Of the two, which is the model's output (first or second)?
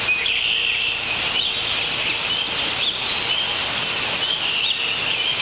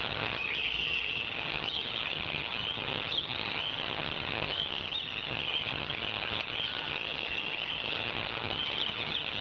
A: second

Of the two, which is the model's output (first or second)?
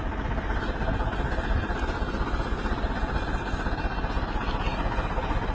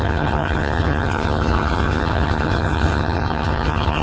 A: second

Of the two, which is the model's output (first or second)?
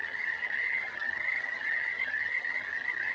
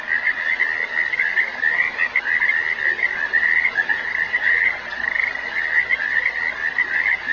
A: first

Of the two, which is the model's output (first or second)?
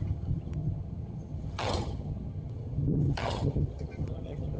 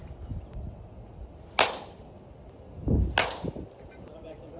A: first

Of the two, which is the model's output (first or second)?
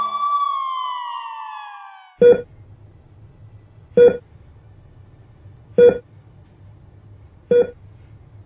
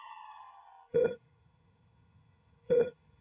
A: second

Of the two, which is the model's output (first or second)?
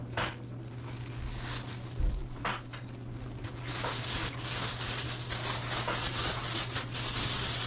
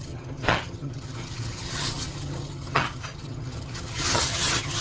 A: second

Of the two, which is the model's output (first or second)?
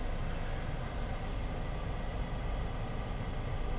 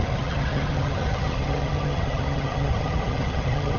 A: second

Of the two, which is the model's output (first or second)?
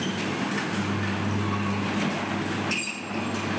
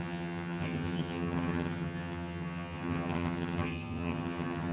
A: second